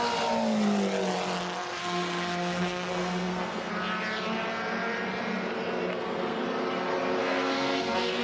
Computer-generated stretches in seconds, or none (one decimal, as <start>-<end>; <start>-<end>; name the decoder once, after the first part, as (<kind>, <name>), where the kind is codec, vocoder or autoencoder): 1.8-3.7 (codec, SNAC); 5.9-6.4; 7.2-8.2